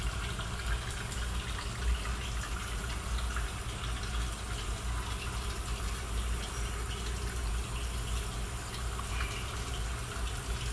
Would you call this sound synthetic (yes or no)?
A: no